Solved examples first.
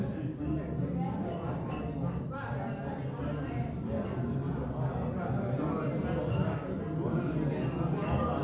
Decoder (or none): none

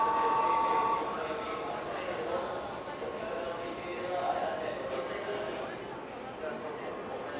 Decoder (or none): none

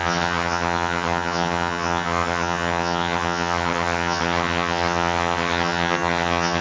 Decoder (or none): vocoder, HiFi-GAN